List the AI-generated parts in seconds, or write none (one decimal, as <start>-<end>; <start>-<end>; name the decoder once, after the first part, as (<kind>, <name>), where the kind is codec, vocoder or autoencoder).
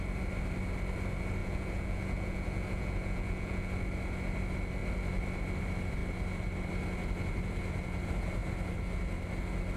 1.4-3.7 (vocoder, Vocos)